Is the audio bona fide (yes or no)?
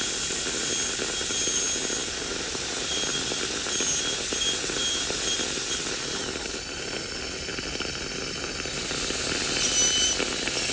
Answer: yes